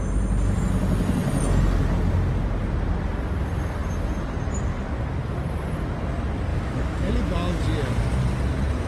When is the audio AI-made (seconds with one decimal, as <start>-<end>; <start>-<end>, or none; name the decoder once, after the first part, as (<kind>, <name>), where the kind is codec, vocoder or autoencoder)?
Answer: 6.5-7.1 (autoencoder, DAC-VAE)